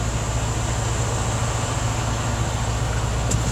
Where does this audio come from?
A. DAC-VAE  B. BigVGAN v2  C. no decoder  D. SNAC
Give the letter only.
C